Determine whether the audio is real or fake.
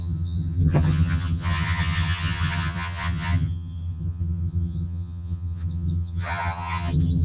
fake